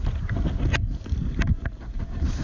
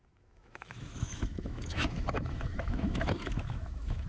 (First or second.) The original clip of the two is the first